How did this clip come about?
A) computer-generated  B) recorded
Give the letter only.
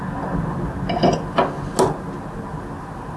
B